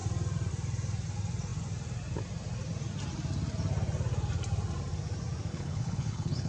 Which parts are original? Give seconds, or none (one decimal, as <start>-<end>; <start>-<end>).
0.0-5.5